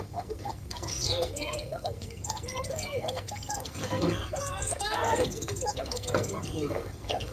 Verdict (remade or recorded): remade